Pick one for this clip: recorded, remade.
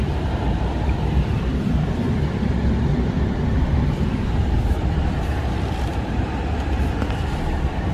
remade